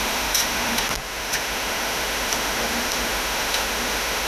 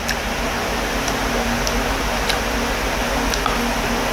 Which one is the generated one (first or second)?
first